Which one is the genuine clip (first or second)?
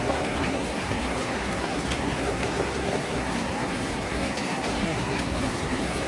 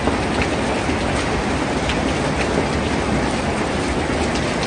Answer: second